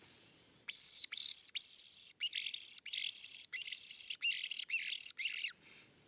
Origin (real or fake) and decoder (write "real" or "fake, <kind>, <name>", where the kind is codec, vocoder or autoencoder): real